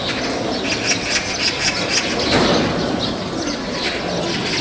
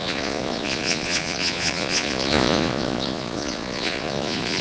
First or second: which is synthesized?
second